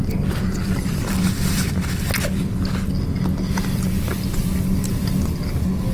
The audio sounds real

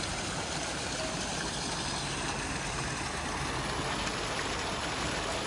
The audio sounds real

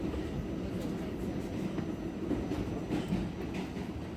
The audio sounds real